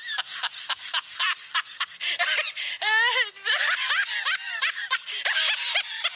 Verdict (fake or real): real